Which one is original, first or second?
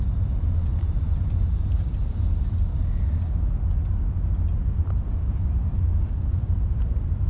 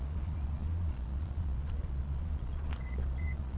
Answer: first